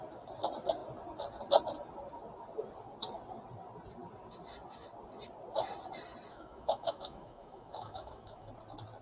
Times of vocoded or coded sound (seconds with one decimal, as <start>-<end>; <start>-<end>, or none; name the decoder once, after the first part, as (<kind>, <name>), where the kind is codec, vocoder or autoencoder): 6.3-8.5 (autoencoder, DAC-VAE)